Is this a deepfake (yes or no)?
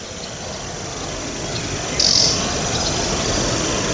no